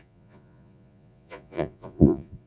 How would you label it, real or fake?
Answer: fake